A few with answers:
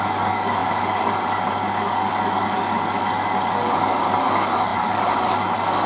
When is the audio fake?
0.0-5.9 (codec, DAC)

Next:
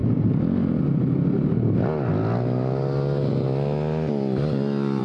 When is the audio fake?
0.0-0.8 (vocoder, BigVGAN v2)

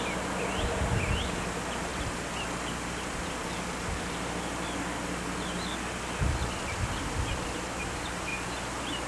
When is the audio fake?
none

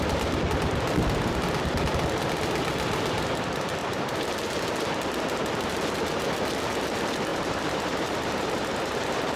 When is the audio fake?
3.8-4.3 (vocoder, BigVGAN v2); 7.3-9.4

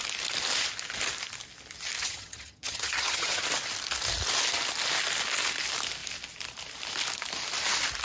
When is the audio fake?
2.0-3.4 (vocoder, HiFi-GAN)

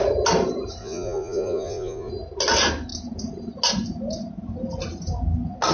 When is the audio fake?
0.8-2.1 (vocoder, Vocos)

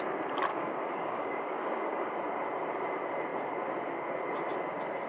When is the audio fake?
0.5-2.1 (codec, DAC)

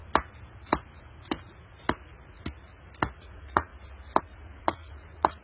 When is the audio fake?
3.2-3.7 (vocoder, Vocos); 4.2-5.4